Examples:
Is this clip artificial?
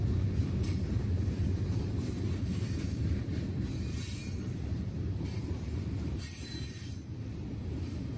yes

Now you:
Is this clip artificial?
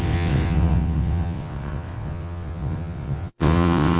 yes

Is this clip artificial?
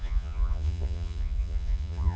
yes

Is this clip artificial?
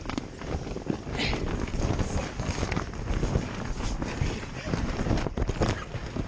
no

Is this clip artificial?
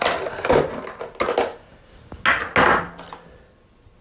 no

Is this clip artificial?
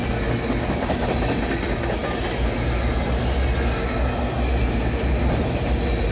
no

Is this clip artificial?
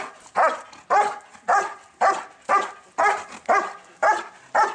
no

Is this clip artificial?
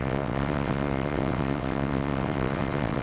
yes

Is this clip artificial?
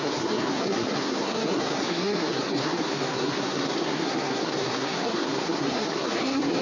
yes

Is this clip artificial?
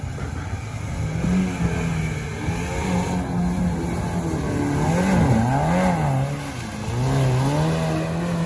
no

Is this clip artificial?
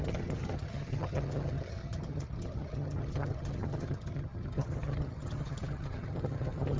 yes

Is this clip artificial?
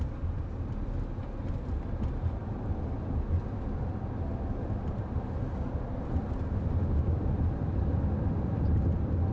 no